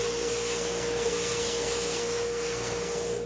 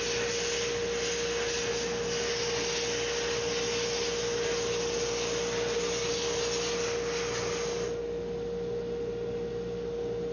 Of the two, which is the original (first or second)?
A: second